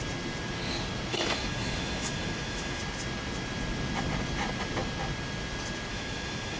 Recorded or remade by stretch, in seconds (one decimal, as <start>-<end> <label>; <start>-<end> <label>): 0.0-1.1 recorded; 1.1-2.8 remade; 2.8-5.9 recorded; 5.9-6.6 remade